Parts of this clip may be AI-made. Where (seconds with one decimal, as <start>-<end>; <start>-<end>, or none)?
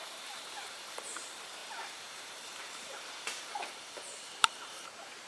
0.0-5.3